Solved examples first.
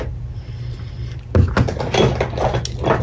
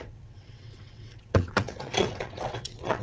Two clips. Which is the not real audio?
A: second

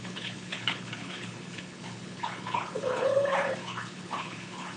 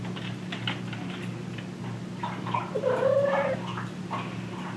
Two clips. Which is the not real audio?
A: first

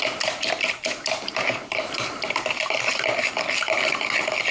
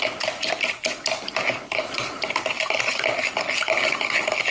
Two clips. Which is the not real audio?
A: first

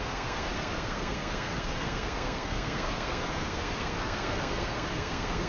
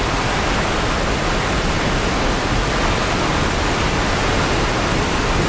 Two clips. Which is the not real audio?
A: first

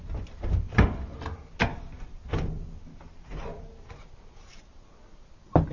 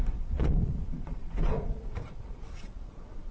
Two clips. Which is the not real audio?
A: second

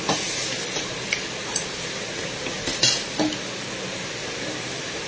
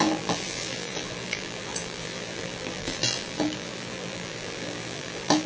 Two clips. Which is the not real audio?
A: second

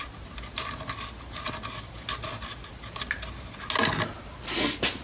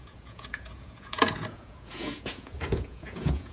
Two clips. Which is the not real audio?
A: second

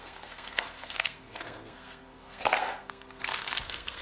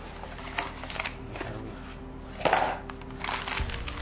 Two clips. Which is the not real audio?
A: first